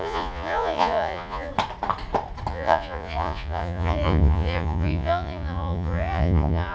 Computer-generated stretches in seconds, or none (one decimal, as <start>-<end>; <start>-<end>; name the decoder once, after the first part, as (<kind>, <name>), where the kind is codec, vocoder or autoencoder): 0.0-1.5 (vocoder, Vocos); 2.5-6.7